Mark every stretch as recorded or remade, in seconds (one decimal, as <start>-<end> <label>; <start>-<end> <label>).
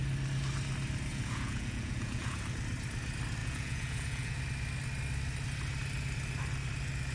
0.0-1.1 recorded; 1.1-2.4 remade; 2.4-3.4 recorded; 3.4-4.4 remade; 4.4-7.1 recorded